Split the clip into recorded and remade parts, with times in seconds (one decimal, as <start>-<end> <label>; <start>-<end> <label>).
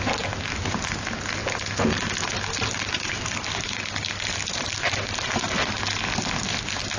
0.0-7.0 recorded